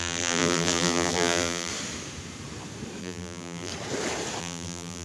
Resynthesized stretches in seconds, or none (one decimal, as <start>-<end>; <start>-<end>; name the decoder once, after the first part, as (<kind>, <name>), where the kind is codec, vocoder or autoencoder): 0.0-1.7 (vocoder, BigVGAN v2); 3.0-3.7; 4.4-5.0

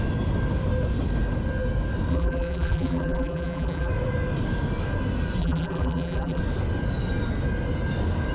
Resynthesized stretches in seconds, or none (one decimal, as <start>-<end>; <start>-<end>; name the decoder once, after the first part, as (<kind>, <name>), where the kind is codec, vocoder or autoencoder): 2.1-3.9 (vocoder, BigVGAN v2); 5.4-6.4